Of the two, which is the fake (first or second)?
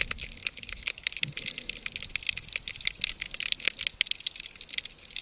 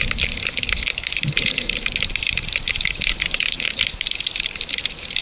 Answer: second